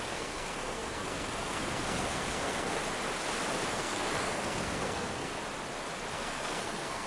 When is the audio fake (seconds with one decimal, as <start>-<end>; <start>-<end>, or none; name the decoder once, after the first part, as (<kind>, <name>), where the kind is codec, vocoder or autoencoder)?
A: 0.0-2.8 (codec, SNAC); 3.7-5.4; 6.1-7.1